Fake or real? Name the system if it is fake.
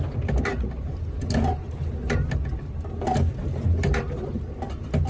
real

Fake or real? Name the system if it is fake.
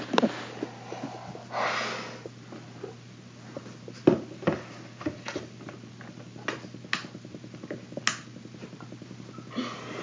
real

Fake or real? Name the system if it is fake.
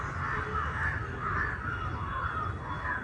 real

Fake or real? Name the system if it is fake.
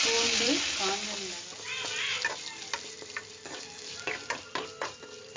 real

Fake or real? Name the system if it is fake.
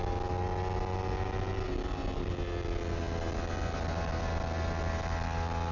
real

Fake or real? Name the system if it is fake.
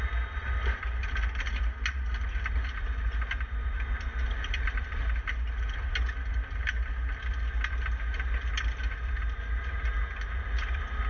real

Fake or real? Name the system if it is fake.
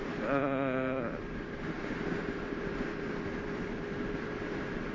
fake, vocoder, BigVGAN v2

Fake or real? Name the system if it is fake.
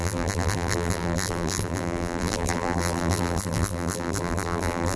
fake, vocoder, BigVGAN v2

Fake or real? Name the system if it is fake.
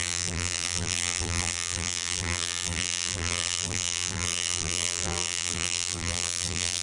fake, vocoder, BigVGAN v2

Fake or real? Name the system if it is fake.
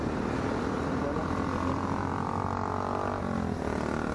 real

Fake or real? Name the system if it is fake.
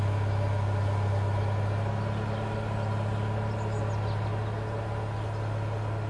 real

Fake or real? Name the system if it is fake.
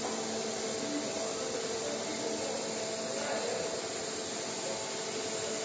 real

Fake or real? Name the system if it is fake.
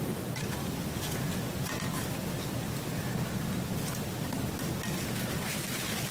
fake, vocoder, BigVGAN v2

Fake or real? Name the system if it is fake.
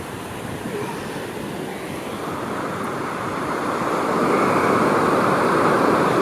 real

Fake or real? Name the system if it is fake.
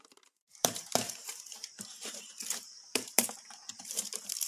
fake, vocoder, BigVGAN v2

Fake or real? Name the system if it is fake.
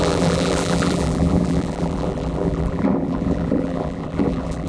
fake, vocoder, BigVGAN v2